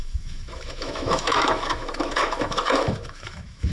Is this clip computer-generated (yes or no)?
yes